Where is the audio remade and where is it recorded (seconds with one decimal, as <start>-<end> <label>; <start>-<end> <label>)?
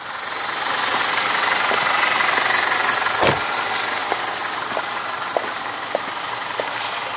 0.0-7.2 recorded